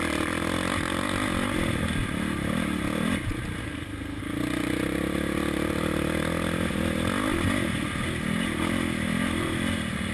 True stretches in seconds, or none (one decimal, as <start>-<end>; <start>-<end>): 0.0-3.6; 4.2-10.1